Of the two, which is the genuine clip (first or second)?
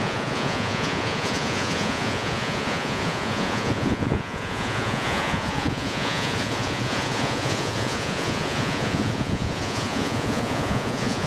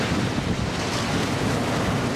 second